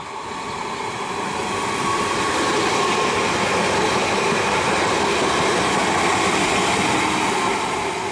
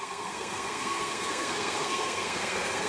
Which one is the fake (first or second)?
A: second